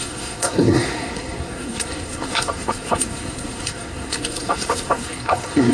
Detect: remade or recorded remade